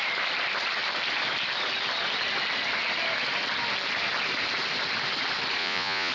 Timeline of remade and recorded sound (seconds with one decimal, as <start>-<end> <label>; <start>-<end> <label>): 0.0-5.6 recorded; 5.6-6.1 remade